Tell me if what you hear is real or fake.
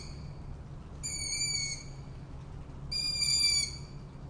real